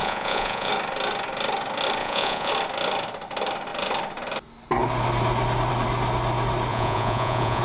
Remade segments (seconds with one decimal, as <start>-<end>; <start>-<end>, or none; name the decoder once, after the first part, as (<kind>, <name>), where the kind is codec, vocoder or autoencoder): 0.0-0.7 (vocoder, Vocos); 2.0-2.5; 6.7-7.6